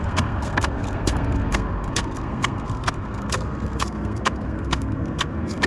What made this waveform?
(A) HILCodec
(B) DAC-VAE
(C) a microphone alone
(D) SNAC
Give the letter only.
D